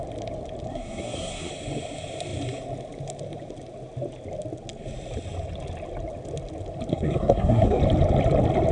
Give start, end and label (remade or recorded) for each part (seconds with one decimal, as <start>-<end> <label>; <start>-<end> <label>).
0.0-0.7 recorded; 0.7-1.5 remade; 1.5-6.9 recorded; 6.9-7.8 remade; 7.8-8.7 recorded